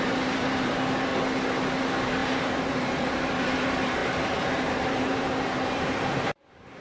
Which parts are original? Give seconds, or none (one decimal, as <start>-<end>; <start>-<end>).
1.1-1.8